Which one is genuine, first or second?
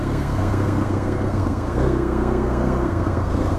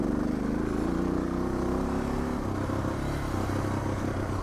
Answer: second